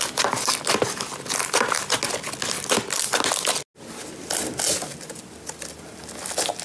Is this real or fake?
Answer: real